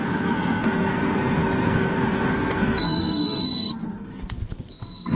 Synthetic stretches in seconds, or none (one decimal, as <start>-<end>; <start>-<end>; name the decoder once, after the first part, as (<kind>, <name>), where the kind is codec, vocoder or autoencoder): 0.0-5.2 (codec, SNAC)